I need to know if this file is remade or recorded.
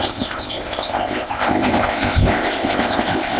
remade